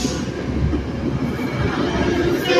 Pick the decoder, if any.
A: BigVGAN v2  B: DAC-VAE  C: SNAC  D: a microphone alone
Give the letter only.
D